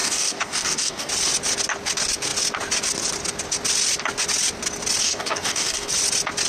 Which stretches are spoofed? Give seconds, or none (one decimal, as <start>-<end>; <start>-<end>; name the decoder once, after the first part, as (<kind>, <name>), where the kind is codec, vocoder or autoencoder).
0.0-1.1 (codec, DAC); 5.0-5.9